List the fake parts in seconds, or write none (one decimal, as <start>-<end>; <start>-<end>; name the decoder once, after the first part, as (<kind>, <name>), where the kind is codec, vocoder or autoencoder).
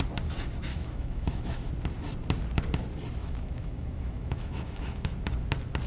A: 0.7-1.7 (autoencoder, DAC-VAE); 3.2-5.1